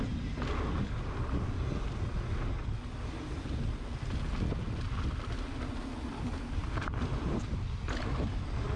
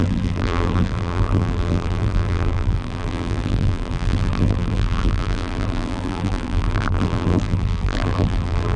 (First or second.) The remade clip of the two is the second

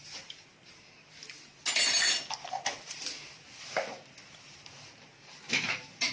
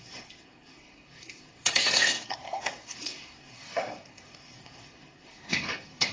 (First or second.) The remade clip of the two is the second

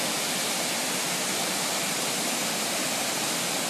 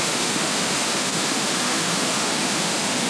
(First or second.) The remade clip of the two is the second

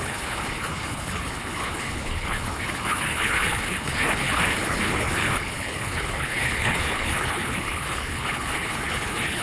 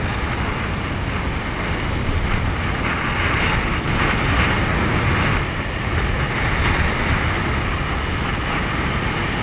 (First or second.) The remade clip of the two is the first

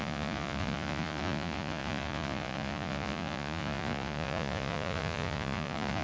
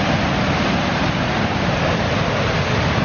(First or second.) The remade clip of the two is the first